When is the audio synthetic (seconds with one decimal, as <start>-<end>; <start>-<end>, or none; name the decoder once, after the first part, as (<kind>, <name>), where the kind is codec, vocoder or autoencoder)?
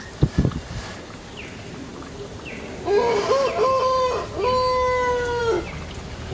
none